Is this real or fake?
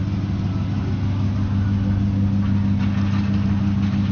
real